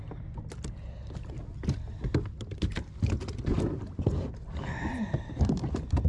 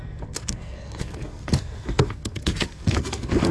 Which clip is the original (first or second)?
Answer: first